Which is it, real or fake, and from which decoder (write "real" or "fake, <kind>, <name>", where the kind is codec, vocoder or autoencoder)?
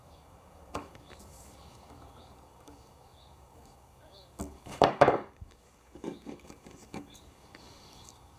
fake, codec, DAC